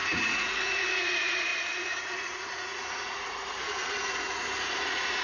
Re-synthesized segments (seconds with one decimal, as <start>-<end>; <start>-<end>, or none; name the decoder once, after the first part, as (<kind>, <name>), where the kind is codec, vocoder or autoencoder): 0.0-5.2 (vocoder, Vocos)